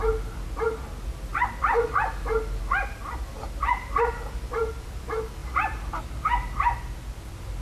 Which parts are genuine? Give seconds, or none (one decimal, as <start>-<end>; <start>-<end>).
0.0-5.4; 5.9-7.6

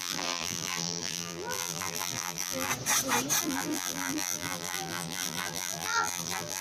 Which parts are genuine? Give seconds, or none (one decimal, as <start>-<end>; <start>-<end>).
2.7-3.4

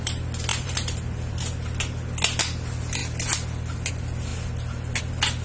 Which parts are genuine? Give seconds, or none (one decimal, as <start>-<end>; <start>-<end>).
0.0-0.5; 1.4-5.4

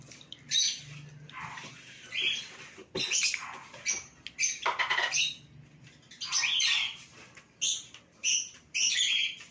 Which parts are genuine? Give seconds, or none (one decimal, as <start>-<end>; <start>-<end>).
0.0-8.2

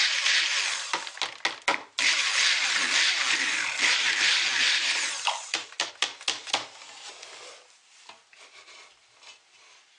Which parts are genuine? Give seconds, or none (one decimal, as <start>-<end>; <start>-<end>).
0.0-1.7; 5.9-10.0

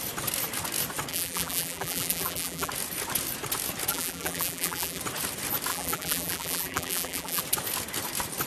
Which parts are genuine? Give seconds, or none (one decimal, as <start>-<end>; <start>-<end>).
0.0-1.1; 2.7-3.9; 5.0-5.7; 7.4-8.5

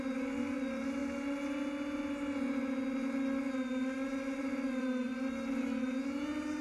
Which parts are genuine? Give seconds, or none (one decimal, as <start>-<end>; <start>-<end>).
1.0-4.4; 5.1-6.6

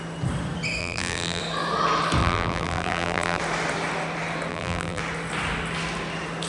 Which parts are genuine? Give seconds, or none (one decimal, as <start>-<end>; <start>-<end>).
0.0-0.8; 1.4-2.2; 3.4-4.5; 5.0-6.5